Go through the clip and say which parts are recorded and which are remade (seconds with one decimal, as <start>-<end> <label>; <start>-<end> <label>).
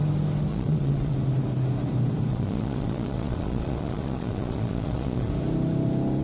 0.0-0.5 recorded; 0.5-1.1 remade; 1.1-2.3 recorded; 2.3-5.3 remade; 5.3-6.2 recorded